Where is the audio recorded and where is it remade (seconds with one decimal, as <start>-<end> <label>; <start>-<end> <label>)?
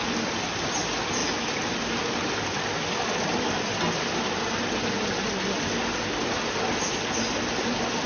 0.0-8.1 recorded